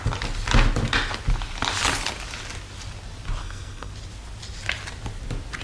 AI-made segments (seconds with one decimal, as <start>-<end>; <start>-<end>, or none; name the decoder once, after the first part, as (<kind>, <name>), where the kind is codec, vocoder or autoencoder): 3.4-3.9 (codec, SNAC)